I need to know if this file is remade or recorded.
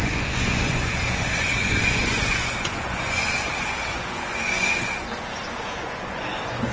remade